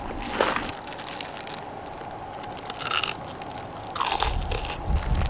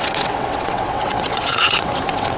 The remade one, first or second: second